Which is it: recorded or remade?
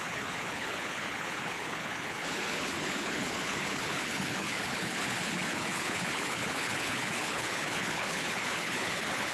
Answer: remade